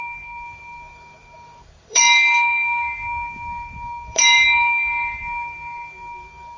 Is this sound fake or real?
fake